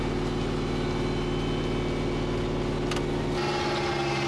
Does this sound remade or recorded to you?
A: recorded